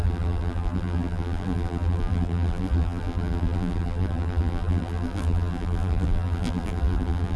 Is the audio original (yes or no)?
no